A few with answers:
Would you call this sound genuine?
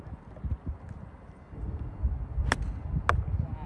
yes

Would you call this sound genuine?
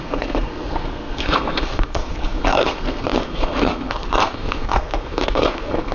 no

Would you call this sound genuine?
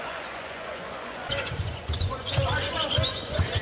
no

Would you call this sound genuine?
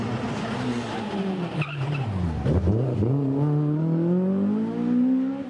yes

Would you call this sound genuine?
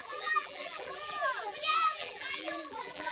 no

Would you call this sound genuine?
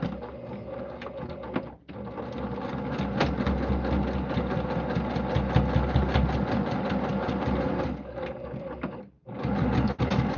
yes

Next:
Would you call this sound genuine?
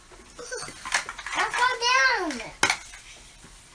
yes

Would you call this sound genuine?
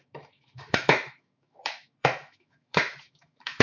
no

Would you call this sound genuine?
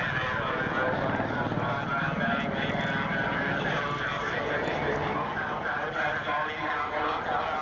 yes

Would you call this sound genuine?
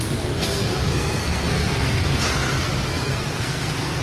no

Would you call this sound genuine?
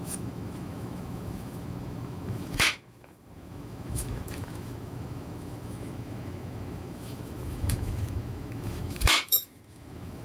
no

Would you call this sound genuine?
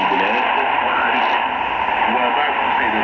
yes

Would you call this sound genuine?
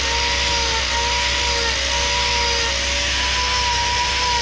yes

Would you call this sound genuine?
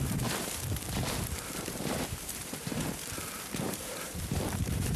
no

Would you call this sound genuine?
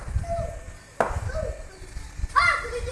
yes